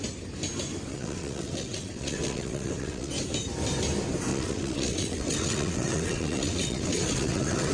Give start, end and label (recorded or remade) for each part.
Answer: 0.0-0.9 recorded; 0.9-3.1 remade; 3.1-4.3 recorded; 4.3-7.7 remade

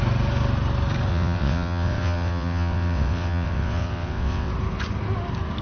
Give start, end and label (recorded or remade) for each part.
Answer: 0.0-1.1 recorded; 1.1-4.5 remade; 4.5-5.6 recorded

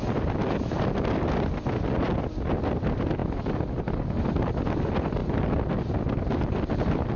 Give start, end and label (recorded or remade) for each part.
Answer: 0.0-7.2 recorded

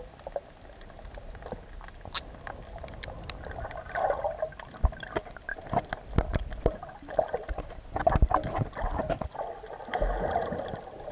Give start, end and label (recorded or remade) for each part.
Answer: 0.0-11.1 recorded

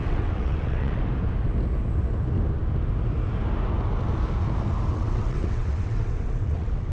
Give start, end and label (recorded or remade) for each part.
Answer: 0.0-1.0 remade; 1.0-4.9 recorded; 4.9-6.9 remade

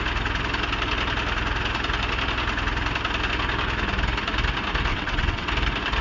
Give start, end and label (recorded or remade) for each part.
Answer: 0.0-4.9 recorded; 4.9-5.5 remade; 5.5-6.0 recorded

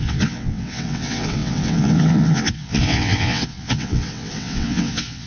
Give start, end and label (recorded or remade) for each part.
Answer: 0.0-5.3 remade